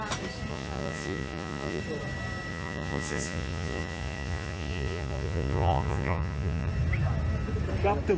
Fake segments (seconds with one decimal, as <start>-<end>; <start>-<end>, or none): 0.5-1.8; 2.5-6.7